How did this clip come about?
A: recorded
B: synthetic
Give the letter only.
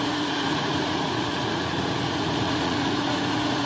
B